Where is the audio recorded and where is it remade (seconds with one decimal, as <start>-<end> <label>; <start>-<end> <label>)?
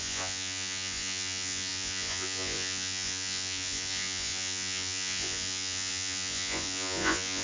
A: 0.0-7.4 remade